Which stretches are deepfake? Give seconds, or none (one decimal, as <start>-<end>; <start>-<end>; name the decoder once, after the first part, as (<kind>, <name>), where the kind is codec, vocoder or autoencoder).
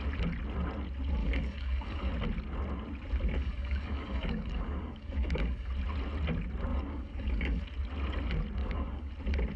1.2-2.1 (codec, DAC); 3.4-5.7; 6.7-7.6; 8.6-9.1